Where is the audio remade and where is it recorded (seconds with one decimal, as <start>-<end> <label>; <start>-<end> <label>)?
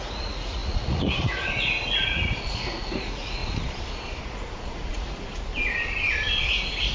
0.0-3.4 remade; 3.4-4.2 recorded; 4.2-5.5 remade; 5.5-6.4 recorded; 6.4-6.9 remade